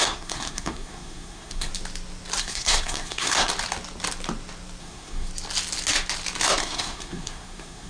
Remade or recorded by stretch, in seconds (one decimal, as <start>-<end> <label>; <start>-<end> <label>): 0.0-1.7 remade; 1.7-2.4 recorded; 2.4-3.5 remade; 3.5-4.8 recorded; 4.8-5.3 remade; 5.3-6.6 recorded; 6.6-7.9 remade